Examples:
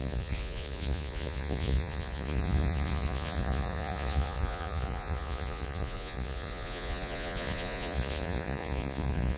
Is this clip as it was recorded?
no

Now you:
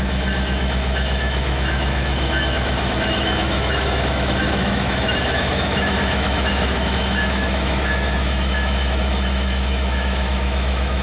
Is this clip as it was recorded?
no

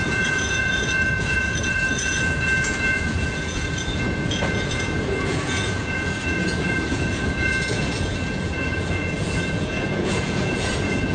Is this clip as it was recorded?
no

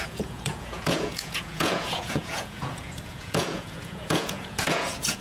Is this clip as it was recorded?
no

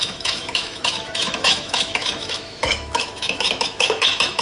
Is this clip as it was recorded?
no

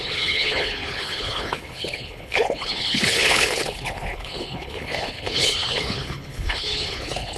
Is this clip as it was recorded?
no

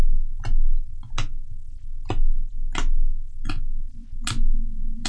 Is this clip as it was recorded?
yes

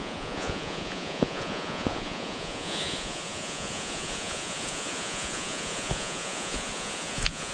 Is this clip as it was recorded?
no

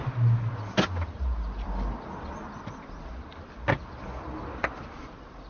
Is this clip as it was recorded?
yes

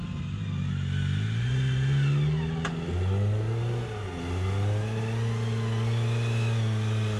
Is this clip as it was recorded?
yes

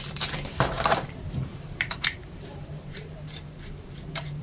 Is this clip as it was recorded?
no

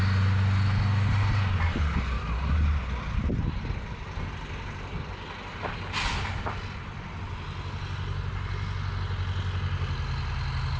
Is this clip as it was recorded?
yes